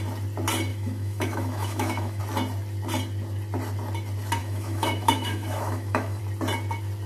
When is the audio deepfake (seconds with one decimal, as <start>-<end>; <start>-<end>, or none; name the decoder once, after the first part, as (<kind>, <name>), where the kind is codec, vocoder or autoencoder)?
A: 0.7-2.2 (autoencoder, DAC-VAE); 4.4-6.2